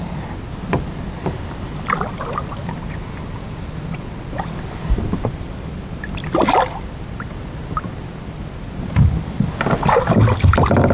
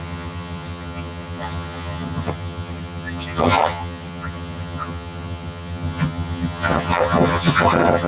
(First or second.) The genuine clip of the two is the first